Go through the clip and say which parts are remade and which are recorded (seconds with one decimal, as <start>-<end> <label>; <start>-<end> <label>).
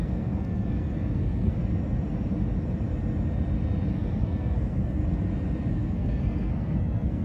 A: 0.0-1.6 remade; 1.6-3.9 recorded; 3.9-5.0 remade; 5.0-5.7 recorded; 5.7-7.2 remade